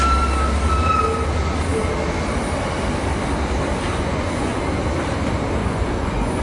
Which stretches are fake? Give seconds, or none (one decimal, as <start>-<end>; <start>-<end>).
3.9-4.6; 5.6-6.4